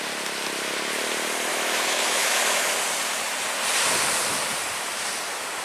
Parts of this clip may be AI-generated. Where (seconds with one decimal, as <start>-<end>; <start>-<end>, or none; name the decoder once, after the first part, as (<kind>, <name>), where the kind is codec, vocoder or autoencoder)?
1.5-2.8 (autoencoder, DAC-VAE)